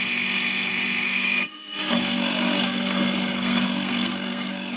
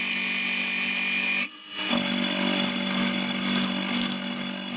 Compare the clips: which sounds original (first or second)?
second